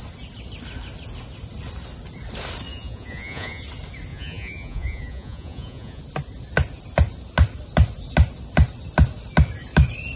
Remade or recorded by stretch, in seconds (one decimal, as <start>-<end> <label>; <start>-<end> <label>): 0.0-2.7 recorded; 2.7-3.6 remade; 3.6-4.1 recorded; 4.1-6.0 remade; 6.0-10.2 recorded